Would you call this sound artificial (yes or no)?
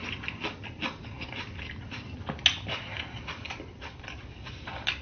no